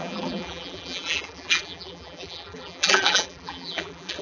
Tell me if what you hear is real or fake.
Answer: fake